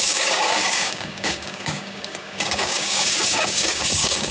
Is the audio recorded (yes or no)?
no